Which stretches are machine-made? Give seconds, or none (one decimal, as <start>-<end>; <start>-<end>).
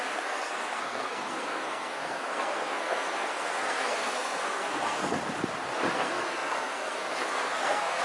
0.0-5.2; 5.9-8.0